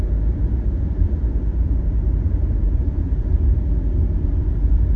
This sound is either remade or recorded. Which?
remade